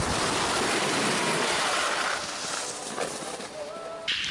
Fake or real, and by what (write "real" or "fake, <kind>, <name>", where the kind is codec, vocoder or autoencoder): real